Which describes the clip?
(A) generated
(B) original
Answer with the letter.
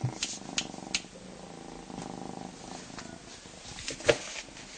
B